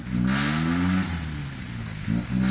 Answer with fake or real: real